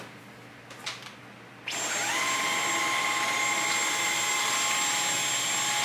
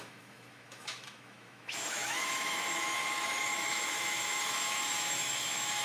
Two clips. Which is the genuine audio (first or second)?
first